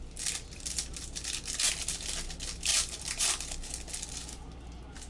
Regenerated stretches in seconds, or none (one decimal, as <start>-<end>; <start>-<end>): none